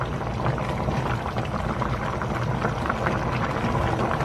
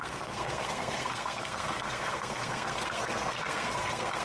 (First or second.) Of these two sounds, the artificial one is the second